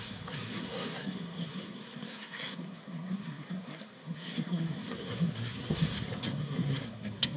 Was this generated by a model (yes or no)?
yes